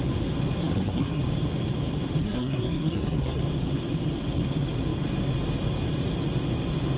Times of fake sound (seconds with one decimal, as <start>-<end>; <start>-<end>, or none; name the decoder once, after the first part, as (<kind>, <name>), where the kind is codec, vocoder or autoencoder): 0.6-1.2 (codec, SNAC); 2.2-3.4